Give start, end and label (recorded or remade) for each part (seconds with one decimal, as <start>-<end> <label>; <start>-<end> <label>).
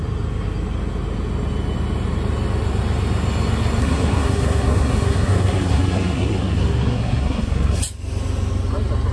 0.0-3.8 recorded; 3.8-7.8 remade; 7.8-9.1 recorded